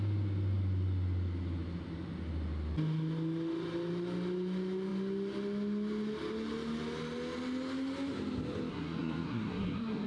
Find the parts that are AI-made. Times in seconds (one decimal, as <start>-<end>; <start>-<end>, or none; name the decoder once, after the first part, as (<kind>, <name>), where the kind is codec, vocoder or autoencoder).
8.7-10.1 (codec, SNAC)